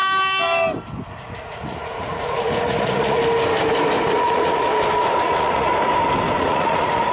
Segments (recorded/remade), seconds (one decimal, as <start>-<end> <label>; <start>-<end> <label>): 0.0-1.1 recorded; 1.1-3.2 remade; 3.2-4.1 recorded; 4.1-4.7 remade; 4.7-5.2 recorded; 5.2-5.7 remade; 5.7-6.4 recorded; 6.4-7.1 remade